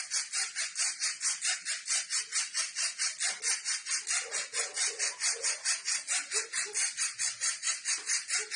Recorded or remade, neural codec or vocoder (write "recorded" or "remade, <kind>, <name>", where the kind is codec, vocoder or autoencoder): recorded